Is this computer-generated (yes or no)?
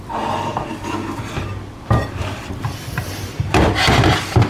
yes